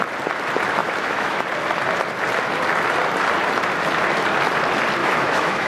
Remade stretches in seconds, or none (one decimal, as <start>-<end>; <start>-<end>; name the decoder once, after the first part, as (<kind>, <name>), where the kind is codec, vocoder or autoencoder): 0.8-1.4 (autoencoder, DAC-VAE); 5.0-5.7

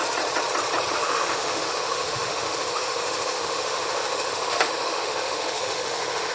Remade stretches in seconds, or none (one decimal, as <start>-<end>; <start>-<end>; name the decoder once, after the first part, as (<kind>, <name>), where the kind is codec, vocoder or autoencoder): 0.9-6.3 (autoencoder, DAC-VAE)

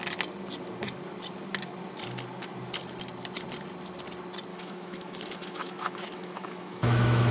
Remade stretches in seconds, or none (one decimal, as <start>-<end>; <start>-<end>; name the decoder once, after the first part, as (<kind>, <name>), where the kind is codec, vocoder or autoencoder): 4.5-7.3 (autoencoder, DAC-VAE)